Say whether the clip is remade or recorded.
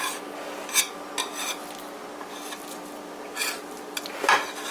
recorded